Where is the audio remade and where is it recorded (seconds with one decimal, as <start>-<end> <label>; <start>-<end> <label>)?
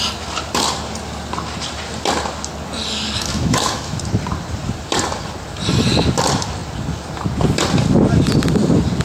0.0-3.3 recorded; 3.3-4.0 remade; 4.0-9.0 recorded